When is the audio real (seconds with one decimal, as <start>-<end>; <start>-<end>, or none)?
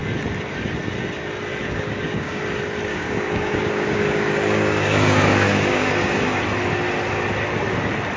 0.0-1.6; 2.4-2.9; 6.4-8.2